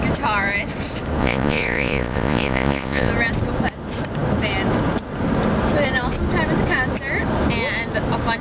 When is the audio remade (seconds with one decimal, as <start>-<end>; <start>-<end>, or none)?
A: 1.2-3.1